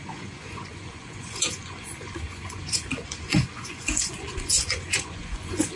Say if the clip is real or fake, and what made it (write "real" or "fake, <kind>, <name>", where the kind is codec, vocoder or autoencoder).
fake, vocoder, Vocos